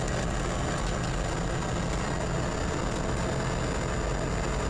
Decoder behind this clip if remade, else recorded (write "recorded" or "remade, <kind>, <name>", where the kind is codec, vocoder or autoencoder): recorded